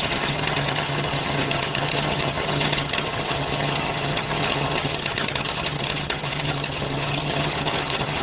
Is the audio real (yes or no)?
no